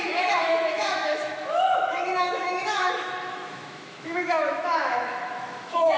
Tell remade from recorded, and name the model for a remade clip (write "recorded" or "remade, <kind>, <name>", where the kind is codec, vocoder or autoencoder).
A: remade, autoencoder, DAC-VAE